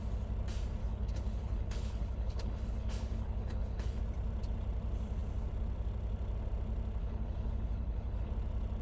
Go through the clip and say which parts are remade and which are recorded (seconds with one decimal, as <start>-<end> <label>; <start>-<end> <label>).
0.0-0.8 recorded; 0.8-4.0 remade; 4.0-7.0 recorded; 7.0-8.3 remade; 8.3-8.8 recorded